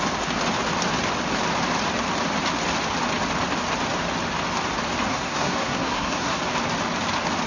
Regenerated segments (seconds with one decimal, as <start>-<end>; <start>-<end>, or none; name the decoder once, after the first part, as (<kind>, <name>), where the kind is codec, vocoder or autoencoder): 5.1-6.4 (codec, SNAC)